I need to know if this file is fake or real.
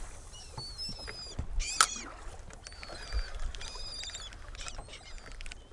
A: real